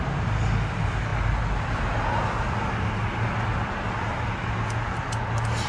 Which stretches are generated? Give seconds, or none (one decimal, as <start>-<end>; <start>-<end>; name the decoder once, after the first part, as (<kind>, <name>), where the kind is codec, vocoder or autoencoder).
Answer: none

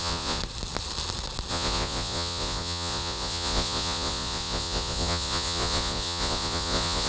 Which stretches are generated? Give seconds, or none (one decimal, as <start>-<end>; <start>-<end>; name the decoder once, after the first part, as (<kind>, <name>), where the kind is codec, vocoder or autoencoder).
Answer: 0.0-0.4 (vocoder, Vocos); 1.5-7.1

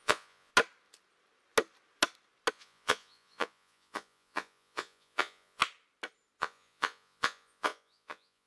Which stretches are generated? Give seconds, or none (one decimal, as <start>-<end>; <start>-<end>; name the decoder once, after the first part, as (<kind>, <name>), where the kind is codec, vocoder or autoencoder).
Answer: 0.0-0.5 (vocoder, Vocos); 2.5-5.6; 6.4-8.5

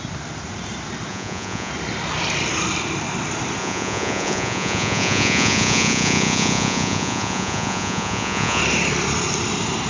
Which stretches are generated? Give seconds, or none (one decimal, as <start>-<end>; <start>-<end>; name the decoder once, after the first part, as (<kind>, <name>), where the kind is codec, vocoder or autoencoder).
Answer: 1.1-1.7 (vocoder, Vocos); 3.6-8.6

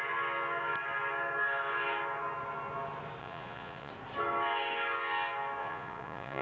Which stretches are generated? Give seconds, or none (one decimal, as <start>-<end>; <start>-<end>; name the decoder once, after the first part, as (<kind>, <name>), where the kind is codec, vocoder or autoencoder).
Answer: 3.2-3.9 (vocoder, Vocos); 5.6-6.4